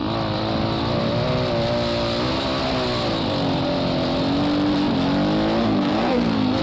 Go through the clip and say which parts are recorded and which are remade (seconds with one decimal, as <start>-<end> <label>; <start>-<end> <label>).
0.0-5.6 recorded; 5.6-6.6 remade